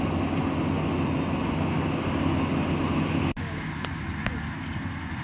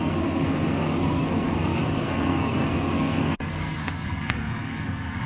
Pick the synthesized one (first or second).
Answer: second